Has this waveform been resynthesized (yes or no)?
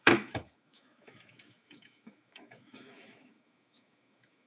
yes